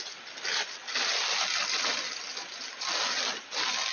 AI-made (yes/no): no